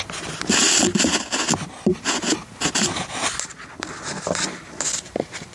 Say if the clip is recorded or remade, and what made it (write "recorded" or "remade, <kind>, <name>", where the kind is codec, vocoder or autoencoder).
recorded